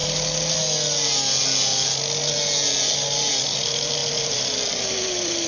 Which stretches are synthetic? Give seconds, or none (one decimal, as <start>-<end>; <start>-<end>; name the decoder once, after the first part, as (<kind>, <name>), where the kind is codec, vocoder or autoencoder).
3.3-5.5 (vocoder, BigVGAN v2)